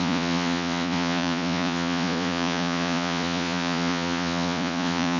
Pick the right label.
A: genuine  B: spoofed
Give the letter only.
B